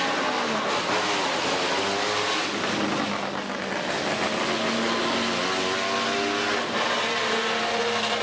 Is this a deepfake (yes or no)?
no